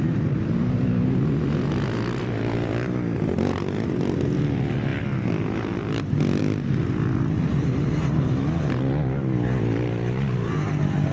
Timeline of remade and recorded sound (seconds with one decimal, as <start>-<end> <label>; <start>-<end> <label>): 0.0-11.1 recorded